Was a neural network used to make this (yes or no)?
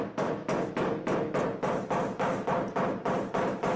no